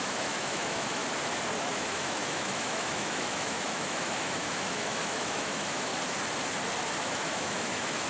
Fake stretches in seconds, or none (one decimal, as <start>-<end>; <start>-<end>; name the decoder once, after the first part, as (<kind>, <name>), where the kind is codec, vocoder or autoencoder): 0.0-1.0 (autoencoder, DAC-VAE); 1.6-5.9; 7.0-8.1